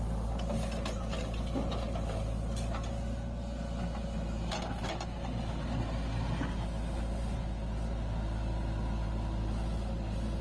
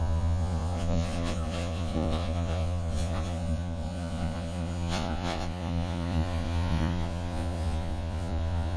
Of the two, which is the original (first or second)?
first